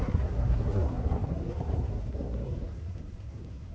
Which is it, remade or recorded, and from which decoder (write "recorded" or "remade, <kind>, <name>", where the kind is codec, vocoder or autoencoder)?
remade, codec, SNAC